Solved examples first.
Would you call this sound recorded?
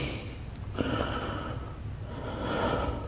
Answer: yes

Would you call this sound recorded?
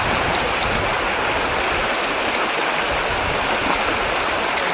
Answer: yes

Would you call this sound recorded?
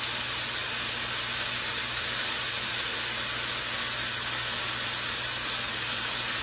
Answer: yes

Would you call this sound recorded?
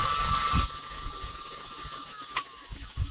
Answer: no